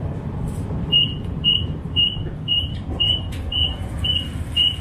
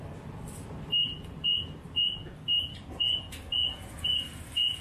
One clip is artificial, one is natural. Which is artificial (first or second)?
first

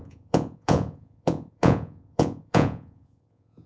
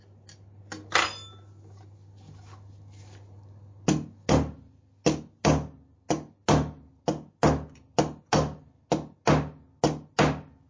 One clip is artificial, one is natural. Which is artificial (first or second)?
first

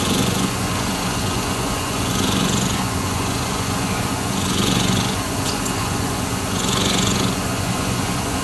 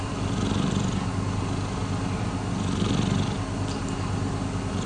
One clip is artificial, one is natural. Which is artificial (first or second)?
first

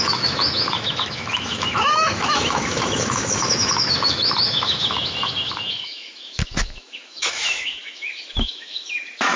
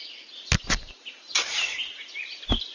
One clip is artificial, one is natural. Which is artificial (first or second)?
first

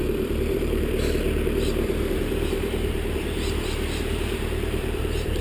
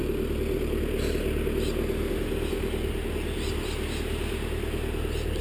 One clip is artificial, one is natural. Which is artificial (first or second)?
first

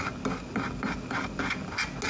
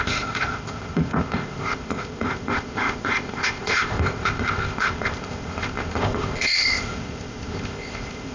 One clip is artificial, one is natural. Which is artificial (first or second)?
second